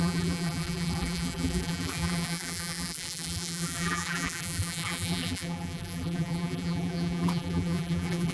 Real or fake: fake